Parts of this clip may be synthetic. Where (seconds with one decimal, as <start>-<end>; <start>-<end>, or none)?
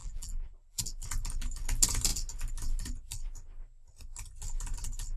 0.0-0.8